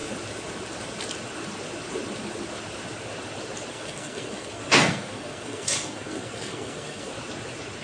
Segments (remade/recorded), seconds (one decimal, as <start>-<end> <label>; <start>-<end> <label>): 0.0-3.7 recorded; 3.7-7.1 remade; 7.1-7.8 recorded